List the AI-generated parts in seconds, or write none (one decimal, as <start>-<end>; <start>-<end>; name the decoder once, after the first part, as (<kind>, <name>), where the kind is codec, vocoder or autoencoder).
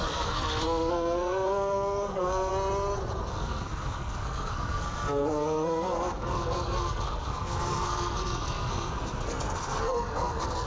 0.0-2.5 (codec, SNAC); 3.3-10.7